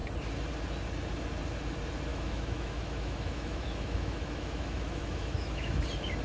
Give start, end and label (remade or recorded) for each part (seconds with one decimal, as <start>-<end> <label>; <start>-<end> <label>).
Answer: 0.0-2.1 recorded; 2.1-5.8 remade; 5.8-6.2 recorded